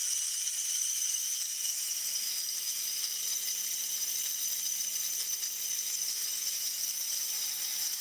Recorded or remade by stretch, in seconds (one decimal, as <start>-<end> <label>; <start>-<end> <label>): 0.0-0.9 recorded; 0.9-3.2 remade; 3.2-5.9 recorded; 5.9-8.0 remade